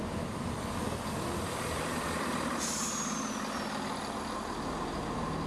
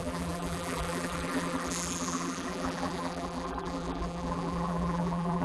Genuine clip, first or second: first